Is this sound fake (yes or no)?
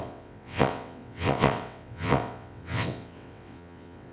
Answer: yes